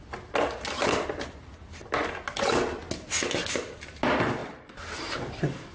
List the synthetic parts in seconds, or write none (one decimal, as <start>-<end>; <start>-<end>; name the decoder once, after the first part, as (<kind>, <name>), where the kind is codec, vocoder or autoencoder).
4.4-5.1 (vocoder, BigVGAN v2)